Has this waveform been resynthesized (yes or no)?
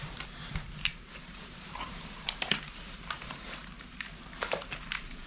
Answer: yes